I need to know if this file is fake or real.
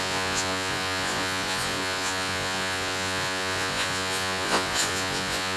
fake